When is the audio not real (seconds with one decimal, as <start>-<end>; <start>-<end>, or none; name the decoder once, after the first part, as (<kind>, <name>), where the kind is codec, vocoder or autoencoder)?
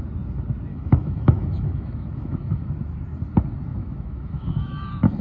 0.7-2.7 (autoencoder, DAC-VAE); 3.7-5.2